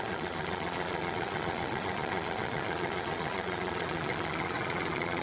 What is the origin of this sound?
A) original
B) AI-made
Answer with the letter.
B